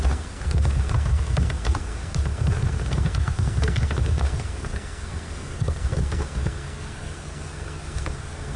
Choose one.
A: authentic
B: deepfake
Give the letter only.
B